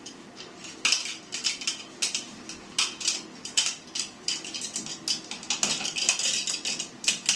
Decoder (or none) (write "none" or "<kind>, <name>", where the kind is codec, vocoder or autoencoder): none